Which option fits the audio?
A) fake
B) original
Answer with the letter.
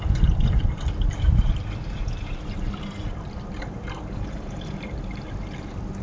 A